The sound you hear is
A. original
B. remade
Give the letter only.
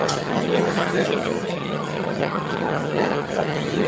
B